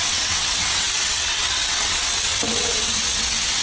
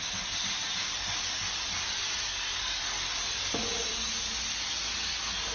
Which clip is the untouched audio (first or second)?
second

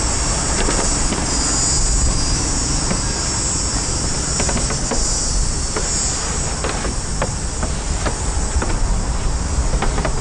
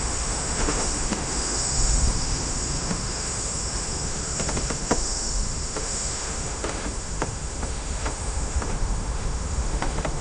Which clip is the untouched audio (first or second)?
first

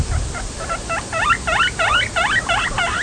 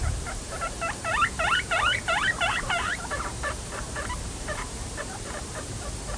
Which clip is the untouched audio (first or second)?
first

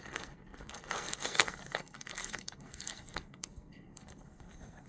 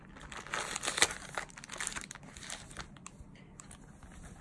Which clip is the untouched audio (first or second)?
second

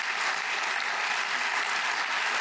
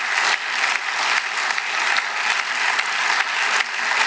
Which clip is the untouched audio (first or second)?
second